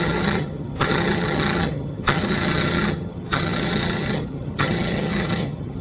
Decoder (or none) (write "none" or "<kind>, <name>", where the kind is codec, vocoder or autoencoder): vocoder, HiFi-GAN